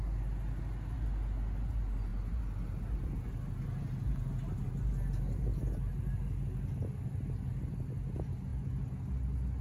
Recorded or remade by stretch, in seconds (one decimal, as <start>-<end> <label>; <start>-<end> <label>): 0.0-9.6 recorded